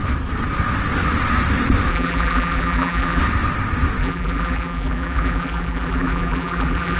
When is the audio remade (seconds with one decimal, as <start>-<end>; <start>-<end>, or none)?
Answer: 1.9-3.2; 4.0-7.0